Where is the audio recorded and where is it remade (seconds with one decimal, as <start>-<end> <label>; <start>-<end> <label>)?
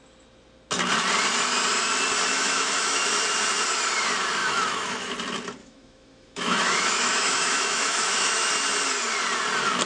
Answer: 0.0-2.3 recorded; 2.3-3.1 remade; 3.1-4.4 recorded; 4.4-5.1 remade; 5.1-5.6 recorded; 5.6-8.5 remade; 8.5-9.9 recorded